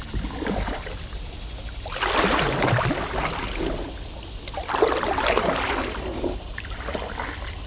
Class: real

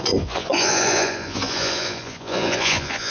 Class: fake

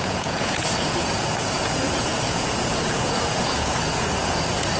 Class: fake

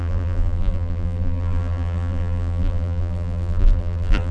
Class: fake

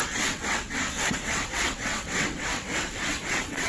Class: fake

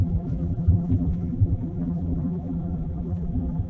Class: fake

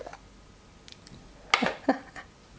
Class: real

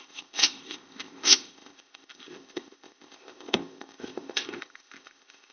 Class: fake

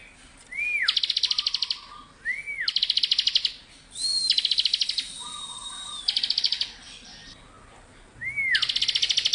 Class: real